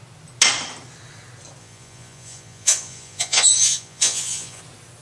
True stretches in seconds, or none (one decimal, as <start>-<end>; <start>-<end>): 0.0-1.6; 4.6-5.0